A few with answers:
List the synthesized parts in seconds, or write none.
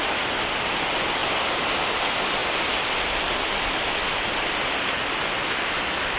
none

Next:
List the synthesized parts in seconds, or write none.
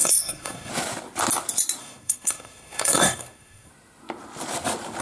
0.0-0.7 (codec, SNAC); 1.8-3.7